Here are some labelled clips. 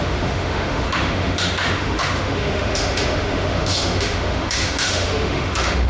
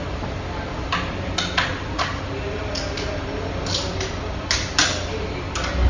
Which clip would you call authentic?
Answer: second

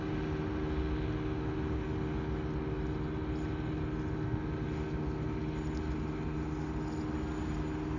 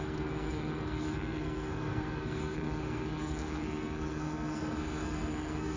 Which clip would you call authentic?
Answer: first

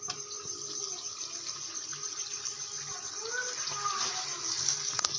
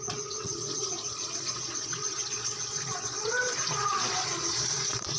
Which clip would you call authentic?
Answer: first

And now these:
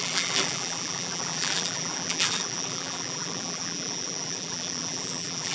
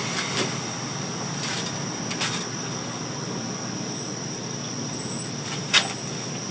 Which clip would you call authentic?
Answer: second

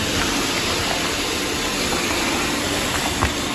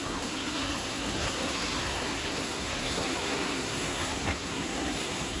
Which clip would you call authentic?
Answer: first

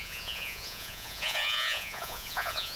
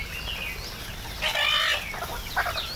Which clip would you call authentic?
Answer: second